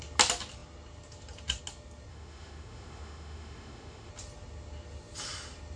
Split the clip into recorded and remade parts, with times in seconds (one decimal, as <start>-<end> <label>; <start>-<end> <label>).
0.0-2.1 recorded; 2.1-4.1 remade; 4.1-5.8 recorded